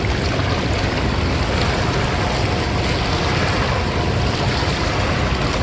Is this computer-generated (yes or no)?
no